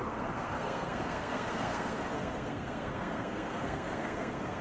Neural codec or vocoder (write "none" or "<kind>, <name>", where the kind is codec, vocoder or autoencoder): codec, SNAC